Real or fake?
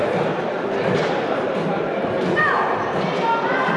fake